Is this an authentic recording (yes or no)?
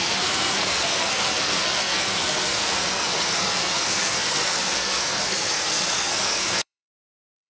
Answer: no